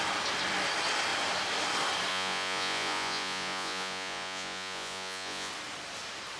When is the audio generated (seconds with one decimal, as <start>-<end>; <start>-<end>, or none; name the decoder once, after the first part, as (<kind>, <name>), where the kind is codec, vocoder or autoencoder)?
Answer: 2.1-5.5 (vocoder, Vocos)